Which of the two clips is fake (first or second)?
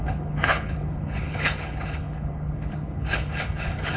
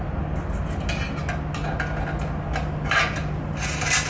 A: first